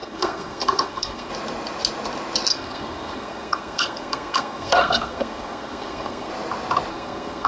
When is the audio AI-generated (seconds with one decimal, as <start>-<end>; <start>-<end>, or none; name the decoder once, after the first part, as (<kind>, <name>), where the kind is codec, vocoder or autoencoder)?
0.0-1.3 (codec, SNAC); 2.5-6.3; 6.9-7.5